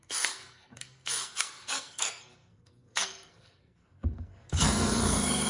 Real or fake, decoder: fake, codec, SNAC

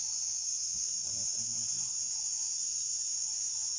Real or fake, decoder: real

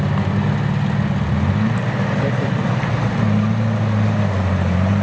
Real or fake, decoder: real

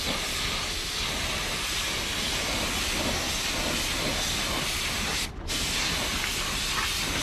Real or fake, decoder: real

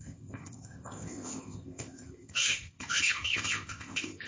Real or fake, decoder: fake, codec, ZipCodec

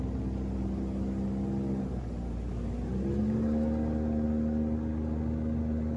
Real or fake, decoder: real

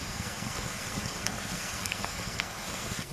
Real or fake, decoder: fake, codec, SNAC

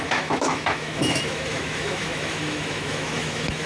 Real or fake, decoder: fake, autoencoder, DAC-VAE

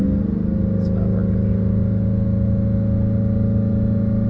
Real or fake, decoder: real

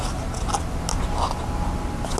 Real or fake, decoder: real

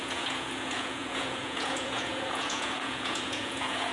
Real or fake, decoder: fake, vocoder, Vocos